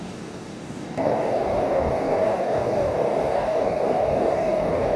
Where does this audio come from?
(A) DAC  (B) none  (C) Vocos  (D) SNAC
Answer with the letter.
A